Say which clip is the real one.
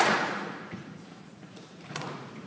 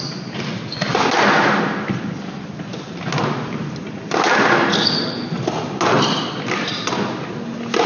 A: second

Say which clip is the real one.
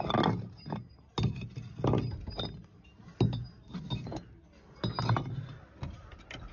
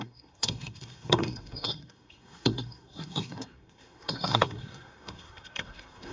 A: first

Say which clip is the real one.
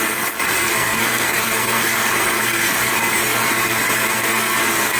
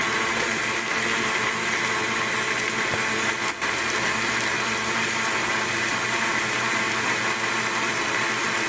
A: second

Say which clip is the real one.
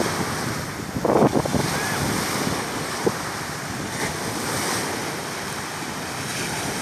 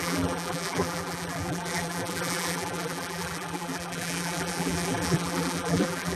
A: first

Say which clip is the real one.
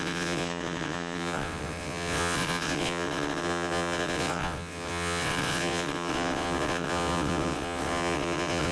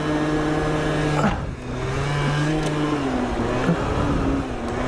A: second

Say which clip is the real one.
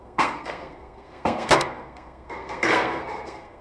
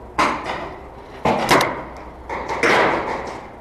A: second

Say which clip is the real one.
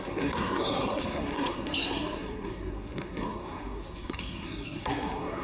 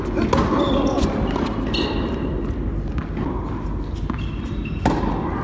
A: second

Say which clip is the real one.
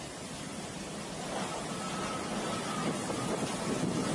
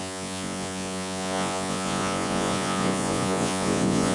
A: first